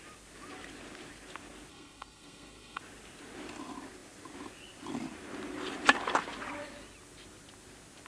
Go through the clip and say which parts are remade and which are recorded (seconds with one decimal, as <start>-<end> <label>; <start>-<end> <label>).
0.0-1.7 recorded; 1.7-2.8 remade; 2.8-8.1 recorded